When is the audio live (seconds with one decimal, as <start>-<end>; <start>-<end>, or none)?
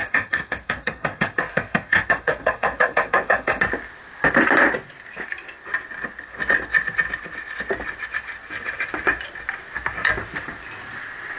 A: 3.6-11.4